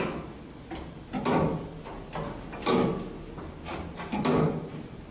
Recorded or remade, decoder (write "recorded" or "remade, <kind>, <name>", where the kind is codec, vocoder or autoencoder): recorded